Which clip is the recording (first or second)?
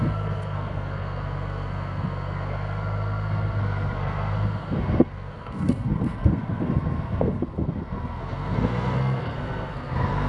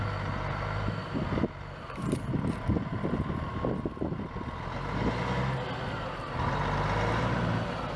second